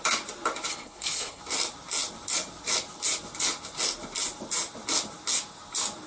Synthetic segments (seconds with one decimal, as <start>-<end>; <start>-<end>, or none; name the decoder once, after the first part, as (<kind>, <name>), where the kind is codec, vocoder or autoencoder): 0.7-1.4 (codec, HILCodec)